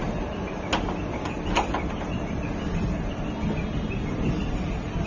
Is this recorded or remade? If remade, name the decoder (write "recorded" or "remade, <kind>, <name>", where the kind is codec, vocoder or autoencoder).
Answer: recorded